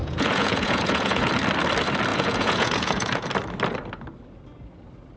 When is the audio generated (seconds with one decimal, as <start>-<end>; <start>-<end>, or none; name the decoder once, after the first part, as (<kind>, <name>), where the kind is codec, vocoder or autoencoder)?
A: 0.0-1.3 (vocoder, Vocos); 2.1-3.3